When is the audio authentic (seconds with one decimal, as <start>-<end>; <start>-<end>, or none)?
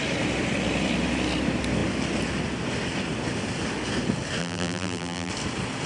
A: 0.0-4.4; 5.3-5.9